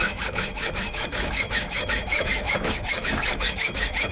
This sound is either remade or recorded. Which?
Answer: remade